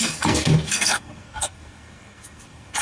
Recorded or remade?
remade